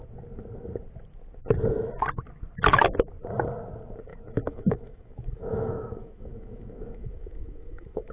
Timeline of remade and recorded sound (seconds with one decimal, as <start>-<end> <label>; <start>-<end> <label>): 0.0-4.1 recorded; 4.1-8.1 remade